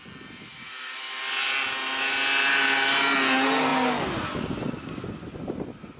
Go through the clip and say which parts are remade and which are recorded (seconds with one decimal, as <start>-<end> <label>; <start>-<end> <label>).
0.0-0.5 recorded; 0.5-1.2 remade; 1.2-6.0 recorded